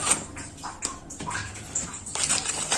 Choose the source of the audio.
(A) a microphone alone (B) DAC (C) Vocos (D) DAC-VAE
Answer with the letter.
A